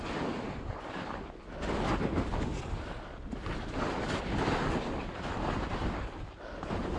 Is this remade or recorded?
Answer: recorded